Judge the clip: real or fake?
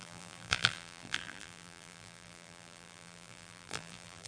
fake